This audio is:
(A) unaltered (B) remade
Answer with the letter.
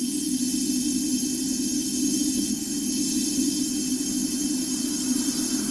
A